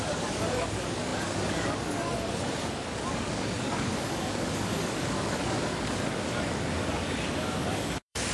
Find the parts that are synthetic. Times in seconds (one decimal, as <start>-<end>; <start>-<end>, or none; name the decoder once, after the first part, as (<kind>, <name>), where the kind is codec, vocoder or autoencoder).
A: 0.0-8.3 (codec, DAC)